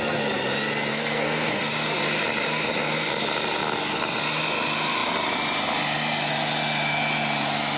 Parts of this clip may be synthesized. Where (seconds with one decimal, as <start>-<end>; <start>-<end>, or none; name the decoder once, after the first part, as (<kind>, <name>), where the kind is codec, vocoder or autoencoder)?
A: 0.9-1.6 (codec, SNAC)